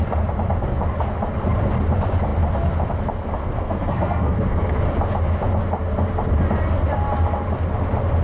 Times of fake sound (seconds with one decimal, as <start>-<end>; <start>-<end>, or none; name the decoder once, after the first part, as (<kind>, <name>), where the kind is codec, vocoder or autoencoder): 3.4-4.7 (codec, SNAC)